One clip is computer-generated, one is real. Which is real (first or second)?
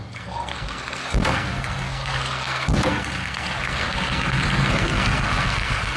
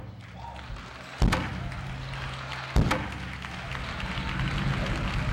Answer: second